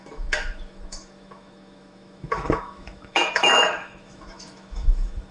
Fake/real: fake